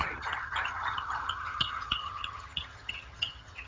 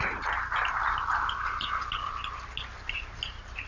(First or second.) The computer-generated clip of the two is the first